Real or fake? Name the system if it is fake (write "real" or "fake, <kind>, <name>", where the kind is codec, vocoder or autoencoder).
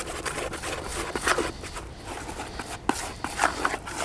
real